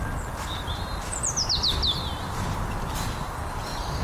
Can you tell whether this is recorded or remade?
recorded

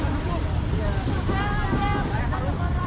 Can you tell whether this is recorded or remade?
remade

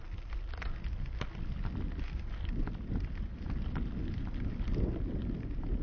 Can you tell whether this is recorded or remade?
recorded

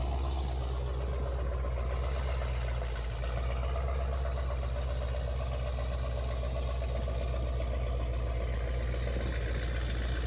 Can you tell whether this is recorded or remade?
recorded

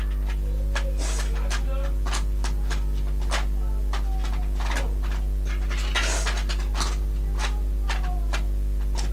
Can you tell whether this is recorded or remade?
recorded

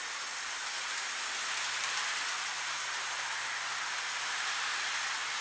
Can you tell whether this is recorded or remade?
remade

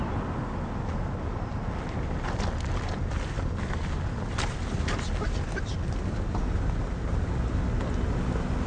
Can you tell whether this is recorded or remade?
recorded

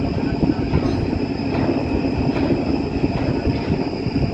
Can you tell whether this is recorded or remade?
recorded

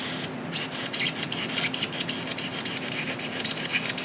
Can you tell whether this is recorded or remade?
recorded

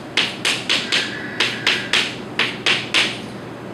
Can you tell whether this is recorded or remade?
recorded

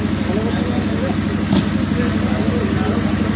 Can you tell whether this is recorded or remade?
recorded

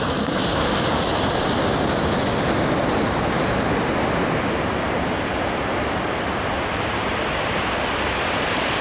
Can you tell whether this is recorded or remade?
recorded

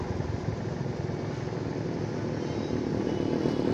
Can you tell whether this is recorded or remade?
recorded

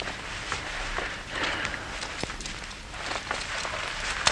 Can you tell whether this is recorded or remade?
remade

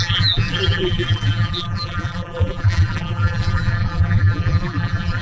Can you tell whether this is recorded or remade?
remade